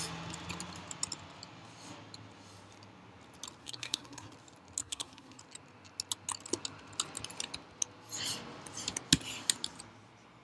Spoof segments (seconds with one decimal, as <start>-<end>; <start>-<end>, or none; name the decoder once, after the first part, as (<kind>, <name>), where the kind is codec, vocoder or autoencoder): 3.6-4.3 (codec, SNAC); 4.8-5.4